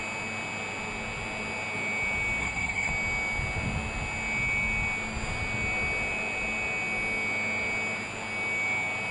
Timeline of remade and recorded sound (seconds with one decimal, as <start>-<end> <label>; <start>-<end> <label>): 0.0-2.4 recorded; 2.4-2.9 remade; 2.9-9.1 recorded